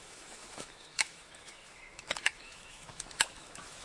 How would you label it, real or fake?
fake